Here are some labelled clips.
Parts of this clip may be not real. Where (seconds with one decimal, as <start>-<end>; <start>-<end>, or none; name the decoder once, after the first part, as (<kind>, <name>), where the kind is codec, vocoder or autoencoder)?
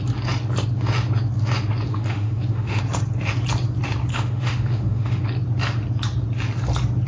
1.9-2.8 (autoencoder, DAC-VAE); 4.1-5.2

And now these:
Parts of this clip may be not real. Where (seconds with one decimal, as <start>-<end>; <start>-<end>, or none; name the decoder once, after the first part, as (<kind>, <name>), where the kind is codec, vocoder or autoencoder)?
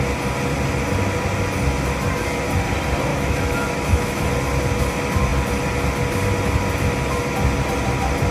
3.1-4.3 (autoencoder, DAC-VAE)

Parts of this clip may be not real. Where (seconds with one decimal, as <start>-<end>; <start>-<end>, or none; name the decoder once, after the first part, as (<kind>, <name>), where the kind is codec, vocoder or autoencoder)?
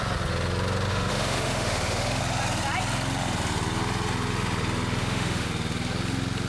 0.9-2.2 (autoencoder, DAC-VAE); 5.0-5.5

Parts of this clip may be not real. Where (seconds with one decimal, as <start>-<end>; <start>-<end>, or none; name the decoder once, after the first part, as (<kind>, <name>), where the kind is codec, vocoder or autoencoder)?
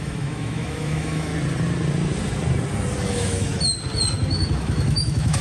0.0-1.3 (autoencoder, DAC-VAE); 3.1-3.5; 4.5-5.4